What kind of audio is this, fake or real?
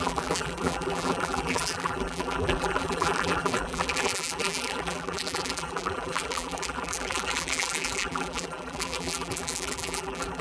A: fake